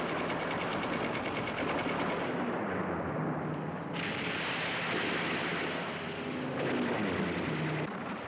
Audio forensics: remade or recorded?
recorded